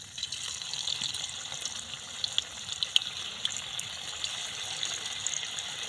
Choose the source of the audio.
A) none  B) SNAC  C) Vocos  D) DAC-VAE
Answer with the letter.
A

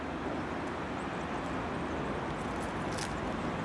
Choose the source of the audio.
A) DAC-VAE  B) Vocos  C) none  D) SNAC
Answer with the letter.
C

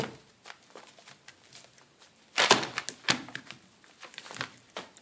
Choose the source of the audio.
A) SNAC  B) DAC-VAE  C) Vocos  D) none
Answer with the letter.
D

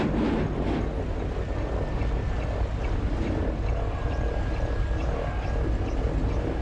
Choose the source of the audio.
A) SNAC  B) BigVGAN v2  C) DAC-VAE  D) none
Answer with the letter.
D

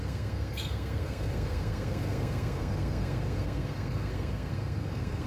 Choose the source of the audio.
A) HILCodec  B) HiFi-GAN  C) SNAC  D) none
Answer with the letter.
C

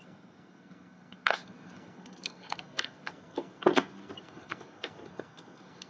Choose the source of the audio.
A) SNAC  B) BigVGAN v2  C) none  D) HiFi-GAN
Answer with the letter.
A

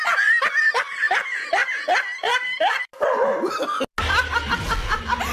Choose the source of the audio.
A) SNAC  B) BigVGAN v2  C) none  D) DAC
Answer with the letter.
C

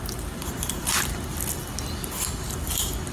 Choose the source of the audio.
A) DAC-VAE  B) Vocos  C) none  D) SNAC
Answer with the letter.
C